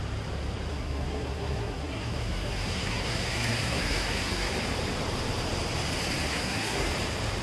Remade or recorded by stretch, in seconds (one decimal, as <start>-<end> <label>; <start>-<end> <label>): 0.0-0.7 recorded; 0.7-4.5 remade; 4.5-6.3 recorded; 6.3-6.9 remade; 6.9-7.4 recorded

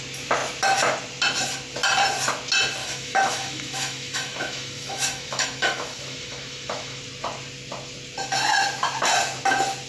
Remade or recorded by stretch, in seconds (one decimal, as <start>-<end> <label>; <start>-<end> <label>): 0.0-2.8 recorded; 2.8-7.0 remade; 7.0-9.9 recorded